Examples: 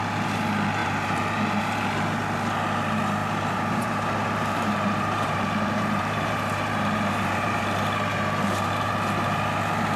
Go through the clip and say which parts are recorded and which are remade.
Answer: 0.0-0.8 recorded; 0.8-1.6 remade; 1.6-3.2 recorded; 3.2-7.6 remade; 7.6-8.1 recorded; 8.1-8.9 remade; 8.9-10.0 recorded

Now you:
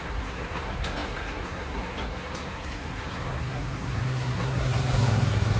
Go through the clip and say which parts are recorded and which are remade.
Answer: 0.0-5.6 remade

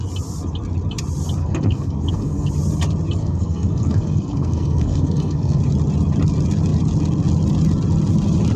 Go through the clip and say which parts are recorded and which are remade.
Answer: 0.0-1.4 recorded; 1.4-2.5 remade; 2.5-3.2 recorded; 3.2-5.6 remade; 5.6-8.6 recorded

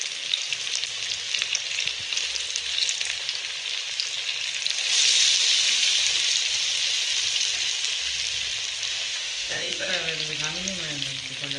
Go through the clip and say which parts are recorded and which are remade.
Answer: 0.0-8.9 recorded; 8.9-9.9 remade; 9.9-11.6 recorded

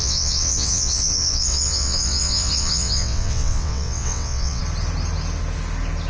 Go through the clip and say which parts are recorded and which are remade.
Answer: 0.0-4.6 remade; 4.6-6.1 recorded

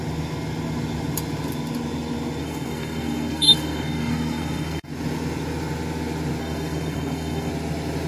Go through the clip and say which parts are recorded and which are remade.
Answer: 0.0-2.4 recorded; 2.4-4.9 remade; 4.9-6.4 recorded; 6.4-7.5 remade; 7.5-8.1 recorded